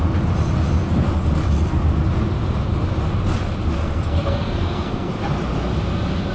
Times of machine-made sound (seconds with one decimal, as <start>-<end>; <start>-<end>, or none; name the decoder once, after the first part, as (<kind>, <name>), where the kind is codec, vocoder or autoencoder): 3.8-5.1 (codec, SNAC)